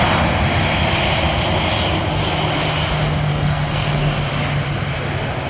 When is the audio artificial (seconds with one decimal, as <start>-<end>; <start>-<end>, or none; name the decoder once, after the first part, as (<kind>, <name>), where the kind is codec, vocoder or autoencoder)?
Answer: 3.3-4.0 (codec, SNAC)